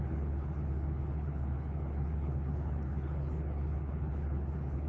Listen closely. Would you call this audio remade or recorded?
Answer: remade